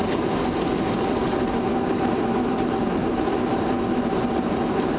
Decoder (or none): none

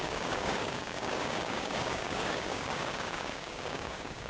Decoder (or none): codec, DAC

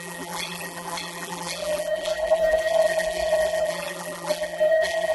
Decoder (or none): vocoder, BigVGAN v2